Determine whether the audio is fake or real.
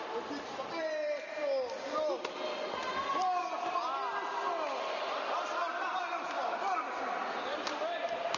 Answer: real